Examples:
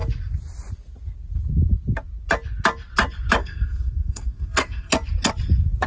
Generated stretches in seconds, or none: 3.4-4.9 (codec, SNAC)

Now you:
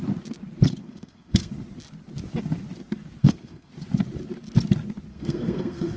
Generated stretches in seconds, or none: 0.8-1.5 (codec, SNAC); 3.2-3.7; 5.1-6.0

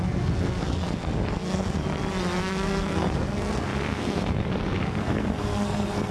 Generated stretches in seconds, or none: 0.0-1.8 (codec, SNAC); 2.4-6.1

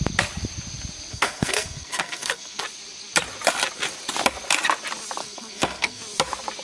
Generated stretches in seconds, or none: 1.1-2.6 (codec, SNAC); 5.2-6.0

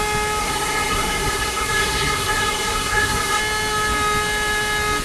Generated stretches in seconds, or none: 0.4-3.4 (codec, SNAC)

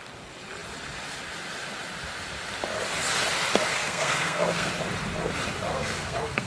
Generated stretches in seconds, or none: 3.7-4.7 (codec, SNAC); 5.7-6.5